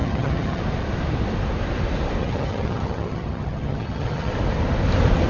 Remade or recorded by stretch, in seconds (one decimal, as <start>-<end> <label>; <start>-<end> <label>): 0.0-0.6 remade; 0.6-2.2 recorded; 2.2-4.3 remade; 4.3-5.3 recorded